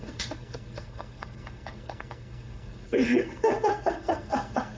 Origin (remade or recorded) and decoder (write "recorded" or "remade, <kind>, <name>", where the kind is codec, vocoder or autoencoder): remade, codec, SNAC